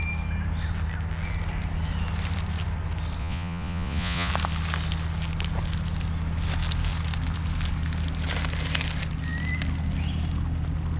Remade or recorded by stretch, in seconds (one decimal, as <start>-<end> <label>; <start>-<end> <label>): 0.0-3.2 recorded; 3.2-4.3 remade; 4.3-11.0 recorded